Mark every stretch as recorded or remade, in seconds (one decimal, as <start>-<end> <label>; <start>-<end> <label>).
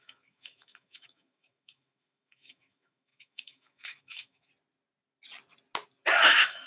0.0-4.5 remade; 4.5-6.1 recorded; 6.1-6.7 remade